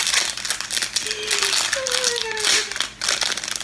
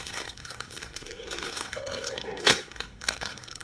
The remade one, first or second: second